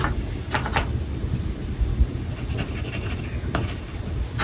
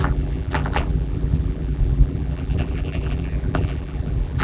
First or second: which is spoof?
second